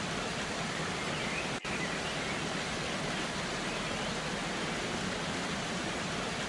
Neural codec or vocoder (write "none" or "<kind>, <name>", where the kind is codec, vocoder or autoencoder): none